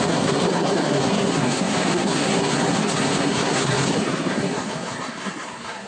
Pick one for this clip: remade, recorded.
remade